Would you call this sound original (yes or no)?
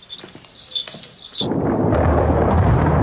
yes